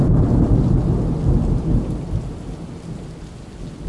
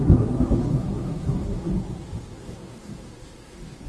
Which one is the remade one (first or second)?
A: second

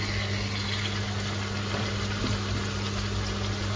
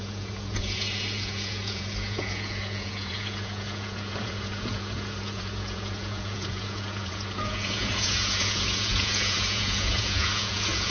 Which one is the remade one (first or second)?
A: second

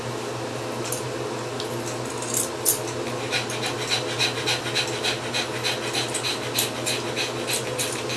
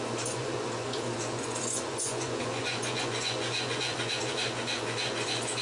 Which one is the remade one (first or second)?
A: second